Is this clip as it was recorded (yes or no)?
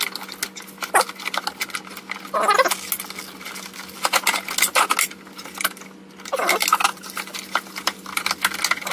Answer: yes